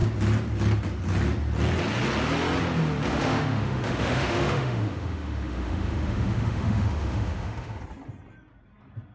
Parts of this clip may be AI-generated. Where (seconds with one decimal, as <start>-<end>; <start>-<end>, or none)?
3.1-7.8